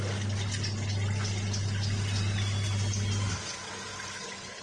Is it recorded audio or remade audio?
recorded